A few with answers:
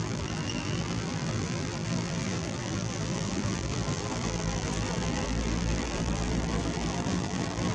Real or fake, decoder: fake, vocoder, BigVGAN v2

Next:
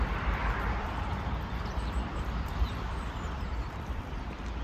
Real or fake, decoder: fake, vocoder, BigVGAN v2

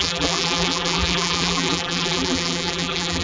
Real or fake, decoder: fake, vocoder, BigVGAN v2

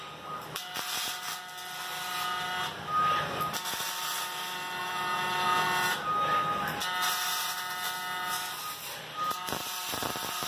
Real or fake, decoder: real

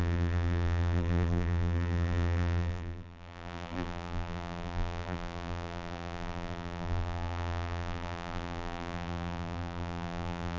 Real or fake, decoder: fake, vocoder, BigVGAN v2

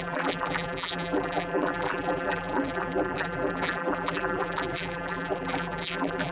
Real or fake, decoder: fake, vocoder, BigVGAN v2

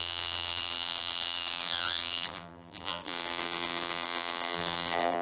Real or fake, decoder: fake, vocoder, BigVGAN v2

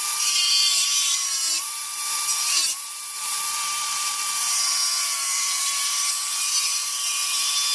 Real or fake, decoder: fake, vocoder, BigVGAN v2